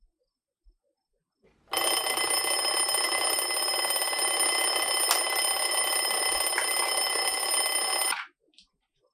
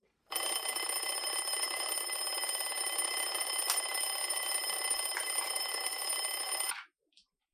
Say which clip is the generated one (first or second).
second